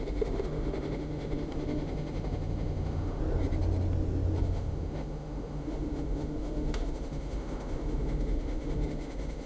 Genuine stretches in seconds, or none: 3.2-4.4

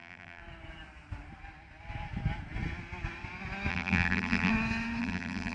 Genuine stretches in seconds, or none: 0.4-3.7; 4.5-5.0

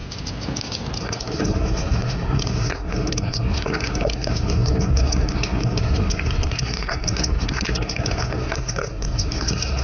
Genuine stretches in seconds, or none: 0.0-1.0

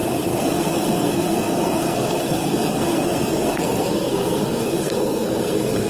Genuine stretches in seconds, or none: none

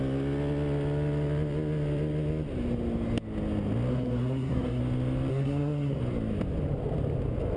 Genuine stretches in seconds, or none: 0.0-3.9; 4.8-5.3; 6.0-7.6